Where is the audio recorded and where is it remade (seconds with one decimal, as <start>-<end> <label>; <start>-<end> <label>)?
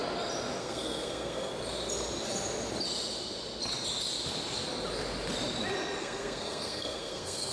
0.0-0.6 recorded; 0.6-1.5 remade; 1.5-6.0 recorded; 6.0-7.5 remade